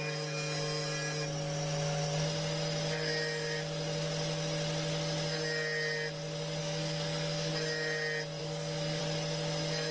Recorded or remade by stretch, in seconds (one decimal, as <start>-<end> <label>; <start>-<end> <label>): 0.0-6.6 recorded; 6.6-7.5 remade; 7.5-8.4 recorded; 8.4-9.0 remade; 9.0-9.9 recorded